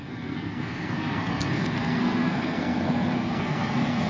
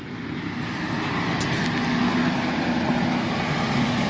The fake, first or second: first